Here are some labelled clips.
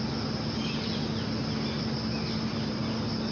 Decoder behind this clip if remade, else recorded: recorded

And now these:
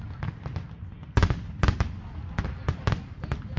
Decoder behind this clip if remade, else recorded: recorded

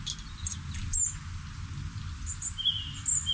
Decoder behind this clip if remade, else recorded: recorded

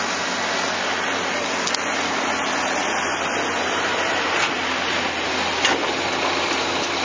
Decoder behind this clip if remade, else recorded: recorded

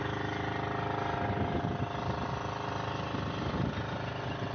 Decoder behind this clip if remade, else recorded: recorded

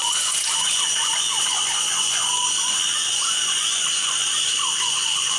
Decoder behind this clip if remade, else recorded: remade, vocoder, Vocos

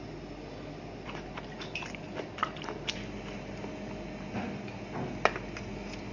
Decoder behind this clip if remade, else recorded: recorded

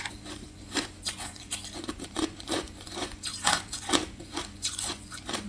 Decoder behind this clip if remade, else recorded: remade, vocoder, Vocos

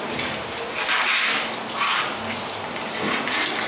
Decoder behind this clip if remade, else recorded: recorded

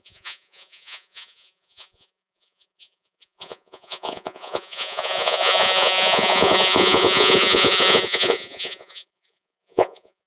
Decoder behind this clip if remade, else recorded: remade, vocoder, Vocos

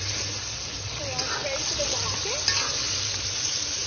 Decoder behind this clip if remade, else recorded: recorded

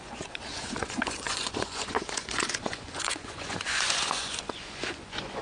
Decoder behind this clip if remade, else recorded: remade, vocoder, Vocos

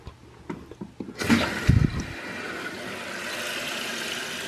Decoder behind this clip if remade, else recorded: recorded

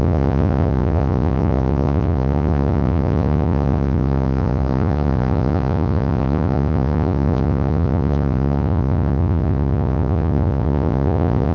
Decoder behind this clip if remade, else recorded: remade, vocoder, Vocos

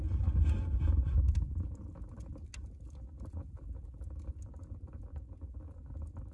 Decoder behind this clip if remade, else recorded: recorded